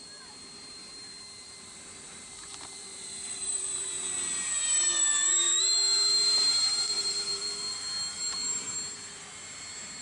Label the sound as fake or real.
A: fake